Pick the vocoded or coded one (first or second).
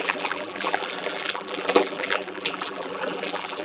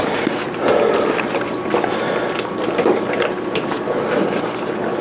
first